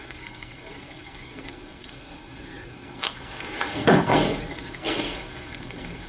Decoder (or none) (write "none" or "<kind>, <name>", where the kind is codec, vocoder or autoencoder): codec, SNAC